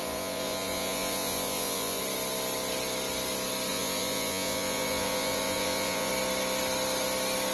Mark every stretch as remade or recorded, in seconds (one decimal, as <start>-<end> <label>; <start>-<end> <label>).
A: 0.0-2.0 remade; 2.0-3.7 recorded; 3.7-6.1 remade; 6.1-7.5 recorded